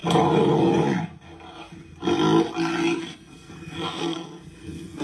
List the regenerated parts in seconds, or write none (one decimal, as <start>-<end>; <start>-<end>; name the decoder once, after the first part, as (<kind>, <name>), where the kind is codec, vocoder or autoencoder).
3.0-5.0 (codec, SNAC)